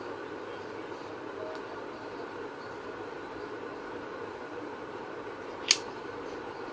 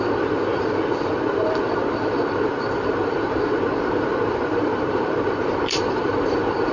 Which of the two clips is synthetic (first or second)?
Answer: second